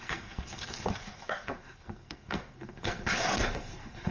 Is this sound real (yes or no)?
no